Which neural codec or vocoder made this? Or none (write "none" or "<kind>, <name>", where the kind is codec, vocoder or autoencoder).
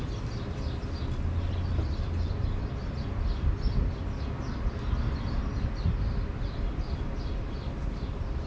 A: none